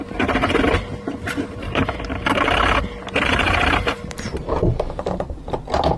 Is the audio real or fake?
fake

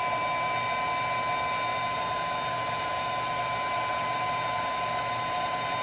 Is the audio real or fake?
real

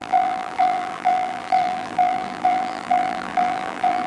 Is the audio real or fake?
fake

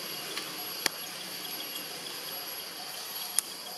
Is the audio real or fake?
real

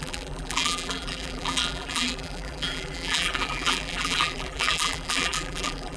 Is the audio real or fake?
fake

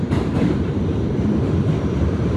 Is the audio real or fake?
fake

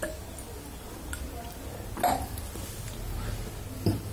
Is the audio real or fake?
real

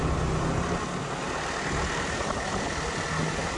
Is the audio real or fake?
real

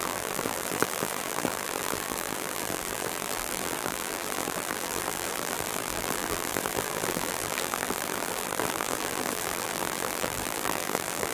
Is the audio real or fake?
fake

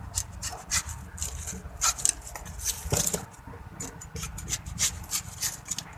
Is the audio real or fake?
real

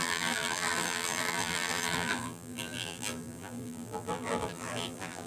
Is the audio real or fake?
fake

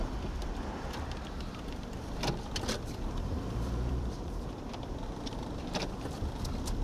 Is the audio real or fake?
fake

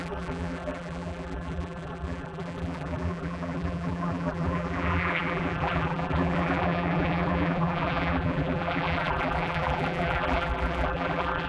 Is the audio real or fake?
fake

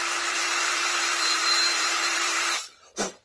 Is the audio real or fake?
fake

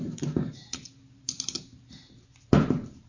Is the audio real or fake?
fake